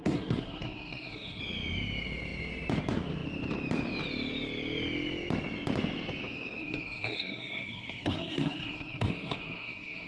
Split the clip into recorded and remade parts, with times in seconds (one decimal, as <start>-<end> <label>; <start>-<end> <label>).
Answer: 0.0-1.4 remade; 1.4-6.6 recorded; 6.6-10.1 remade